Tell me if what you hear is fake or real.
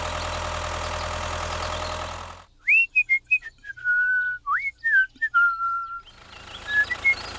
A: real